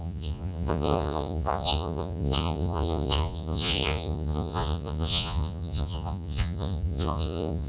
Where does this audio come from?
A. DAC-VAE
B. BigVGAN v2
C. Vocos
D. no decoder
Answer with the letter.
C